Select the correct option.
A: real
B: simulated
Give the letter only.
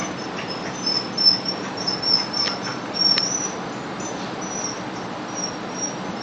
A